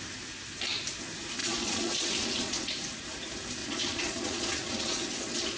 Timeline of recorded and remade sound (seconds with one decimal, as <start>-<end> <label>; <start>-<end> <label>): 0.0-1.4 recorded; 1.4-2.7 remade; 2.7-3.6 recorded; 3.6-5.6 remade